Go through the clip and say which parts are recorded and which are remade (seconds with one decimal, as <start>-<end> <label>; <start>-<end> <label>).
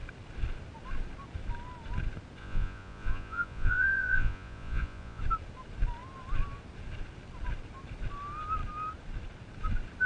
0.0-2.4 recorded; 2.4-5.2 remade; 5.2-10.1 recorded